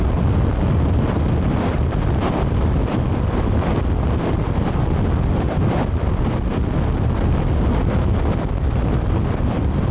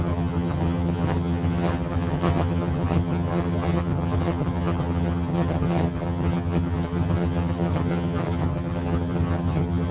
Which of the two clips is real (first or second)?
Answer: first